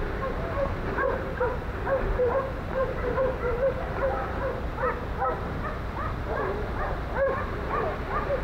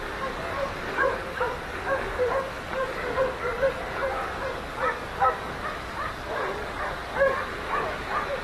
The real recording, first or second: first